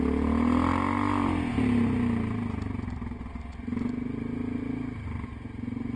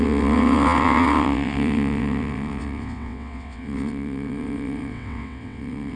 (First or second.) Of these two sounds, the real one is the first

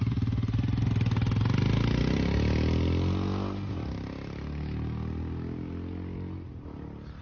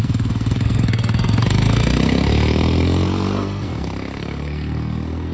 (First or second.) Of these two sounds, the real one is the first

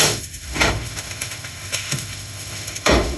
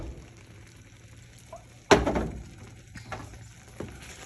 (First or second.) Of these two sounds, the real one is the second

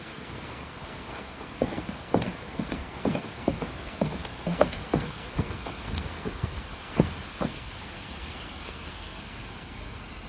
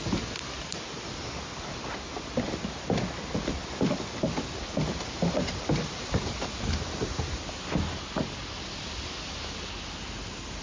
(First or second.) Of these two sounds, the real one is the second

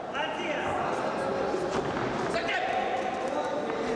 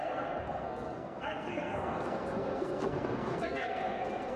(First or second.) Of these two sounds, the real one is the first